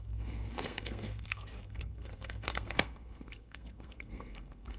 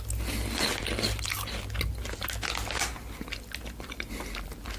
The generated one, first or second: first